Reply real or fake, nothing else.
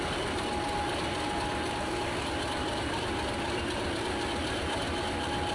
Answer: real